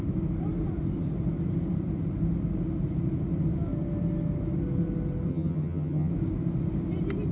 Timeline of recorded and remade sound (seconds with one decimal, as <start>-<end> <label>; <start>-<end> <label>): 0.0-5.3 recorded; 5.3-6.1 remade; 6.1-7.3 recorded